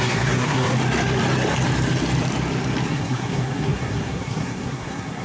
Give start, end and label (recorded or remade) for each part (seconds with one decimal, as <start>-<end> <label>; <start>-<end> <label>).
0.0-0.7 remade; 0.7-2.9 recorded; 2.9-5.2 remade